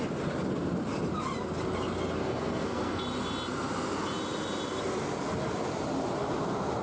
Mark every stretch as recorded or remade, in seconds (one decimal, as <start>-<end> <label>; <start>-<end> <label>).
0.0-2.2 recorded; 2.2-3.0 remade; 3.0-6.8 recorded